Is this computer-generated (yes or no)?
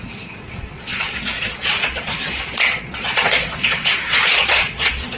yes